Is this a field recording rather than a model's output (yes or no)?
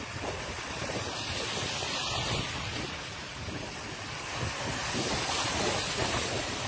yes